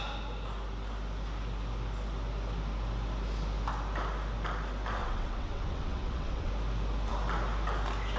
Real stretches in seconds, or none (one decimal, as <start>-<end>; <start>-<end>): 0.0-5.0; 6.5-8.2